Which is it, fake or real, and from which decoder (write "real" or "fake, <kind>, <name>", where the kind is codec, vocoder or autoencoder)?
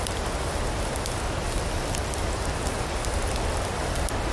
real